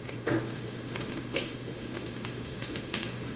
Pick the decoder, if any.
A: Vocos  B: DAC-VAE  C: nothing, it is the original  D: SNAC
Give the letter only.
B